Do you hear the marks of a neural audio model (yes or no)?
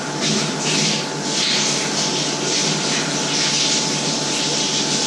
no